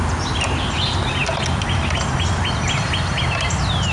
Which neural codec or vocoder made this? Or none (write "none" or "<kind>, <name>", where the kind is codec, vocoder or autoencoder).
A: none